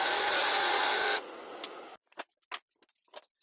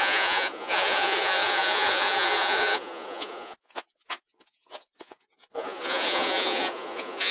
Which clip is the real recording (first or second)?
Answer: first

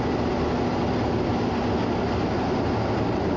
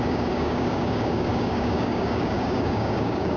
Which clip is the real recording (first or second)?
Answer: first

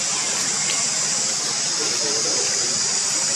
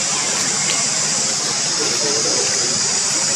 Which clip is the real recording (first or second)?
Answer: first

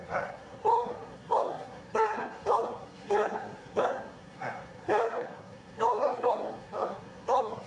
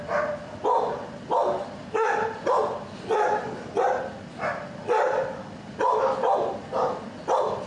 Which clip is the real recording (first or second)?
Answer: second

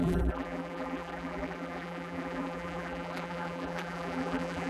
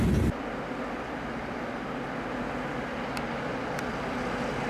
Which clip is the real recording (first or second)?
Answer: second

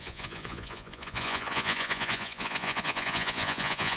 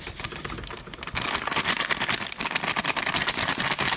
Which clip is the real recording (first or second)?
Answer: second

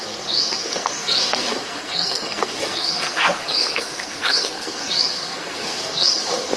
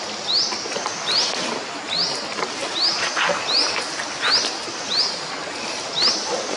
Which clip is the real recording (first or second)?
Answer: second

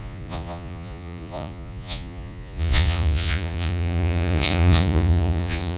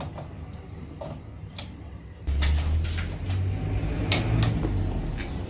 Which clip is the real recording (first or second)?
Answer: second